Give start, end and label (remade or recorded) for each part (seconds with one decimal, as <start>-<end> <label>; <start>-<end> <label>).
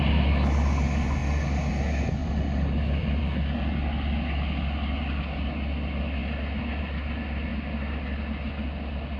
0.0-2.2 recorded; 2.2-3.2 remade; 3.2-9.2 recorded